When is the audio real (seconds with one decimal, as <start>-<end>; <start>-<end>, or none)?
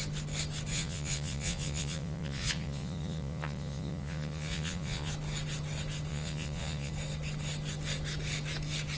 0.0-0.7; 5.1-6.1; 6.9-9.0